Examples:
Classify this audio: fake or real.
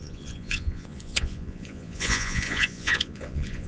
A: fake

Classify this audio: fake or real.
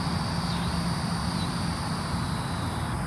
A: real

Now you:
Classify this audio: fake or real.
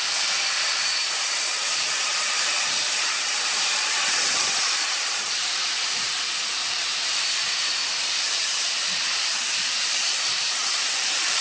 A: fake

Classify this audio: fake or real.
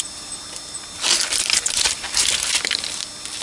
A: fake